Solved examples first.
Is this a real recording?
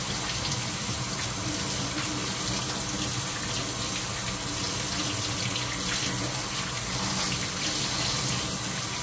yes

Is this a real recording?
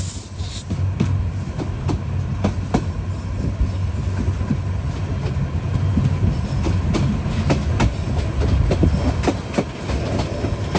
yes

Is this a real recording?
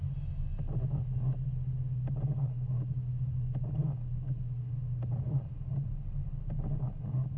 yes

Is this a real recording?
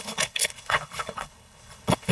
no